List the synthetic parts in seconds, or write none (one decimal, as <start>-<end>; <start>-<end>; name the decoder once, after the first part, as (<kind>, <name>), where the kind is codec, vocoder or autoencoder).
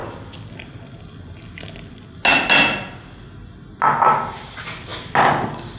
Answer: none